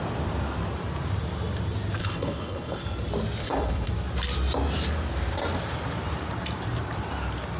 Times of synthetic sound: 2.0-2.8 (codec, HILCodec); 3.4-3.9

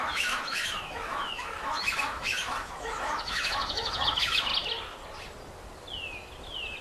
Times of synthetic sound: 0.0-4.5 (autoencoder, DAC-VAE)